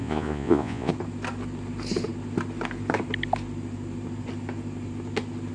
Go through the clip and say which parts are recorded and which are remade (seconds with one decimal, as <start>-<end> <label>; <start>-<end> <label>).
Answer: 0.0-0.9 remade; 0.9-5.5 recorded

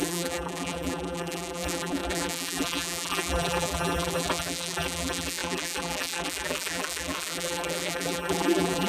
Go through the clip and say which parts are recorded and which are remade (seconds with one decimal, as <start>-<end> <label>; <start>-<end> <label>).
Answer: 0.0-8.9 remade

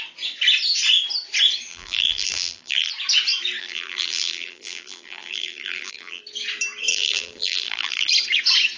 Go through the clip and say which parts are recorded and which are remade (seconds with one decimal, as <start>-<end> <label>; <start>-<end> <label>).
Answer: 0.0-1.7 recorded; 1.7-2.9 remade; 2.9-3.6 recorded; 3.6-6.2 remade; 6.2-6.9 recorded; 6.9-8.1 remade; 8.1-8.8 recorded

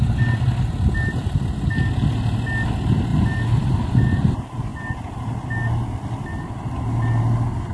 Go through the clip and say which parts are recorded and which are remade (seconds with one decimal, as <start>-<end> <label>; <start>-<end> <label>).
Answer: 0.0-7.7 recorded

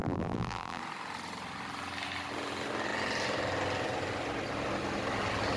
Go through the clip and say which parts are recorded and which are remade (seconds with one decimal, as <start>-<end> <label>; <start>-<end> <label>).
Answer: 0.0-0.8 remade; 0.8-5.6 recorded

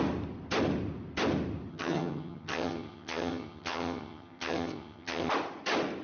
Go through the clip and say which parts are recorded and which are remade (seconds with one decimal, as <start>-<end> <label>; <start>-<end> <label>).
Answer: 0.0-1.7 recorded; 1.7-5.3 remade; 5.3-6.0 recorded

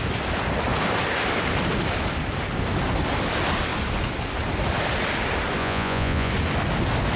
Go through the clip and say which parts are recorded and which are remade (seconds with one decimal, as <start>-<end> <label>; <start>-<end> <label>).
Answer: 0.0-5.6 recorded; 5.6-6.3 remade; 6.3-7.2 recorded